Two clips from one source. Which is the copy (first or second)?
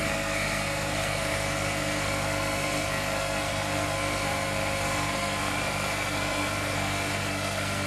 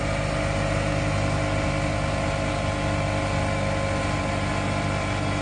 first